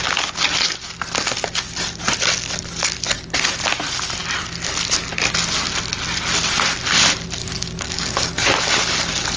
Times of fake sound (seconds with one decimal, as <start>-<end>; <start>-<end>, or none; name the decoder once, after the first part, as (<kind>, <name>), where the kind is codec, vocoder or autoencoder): 7.4-8.5 (codec, DAC)